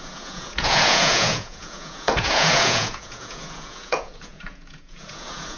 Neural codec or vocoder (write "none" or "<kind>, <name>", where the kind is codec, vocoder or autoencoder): vocoder, Vocos